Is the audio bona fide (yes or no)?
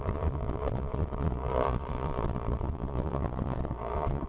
no